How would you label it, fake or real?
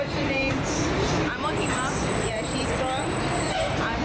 fake